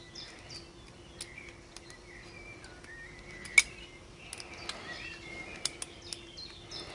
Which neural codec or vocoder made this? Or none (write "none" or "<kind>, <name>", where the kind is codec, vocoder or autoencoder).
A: none